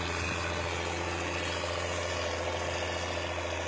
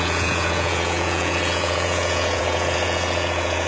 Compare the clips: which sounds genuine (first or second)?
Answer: first